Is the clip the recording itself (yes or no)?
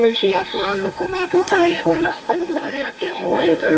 no